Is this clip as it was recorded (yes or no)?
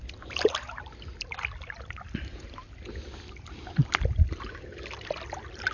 yes